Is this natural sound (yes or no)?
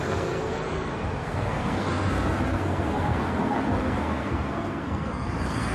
no